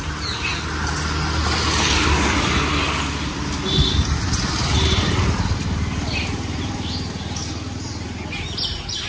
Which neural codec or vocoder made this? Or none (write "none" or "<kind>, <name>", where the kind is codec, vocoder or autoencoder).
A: none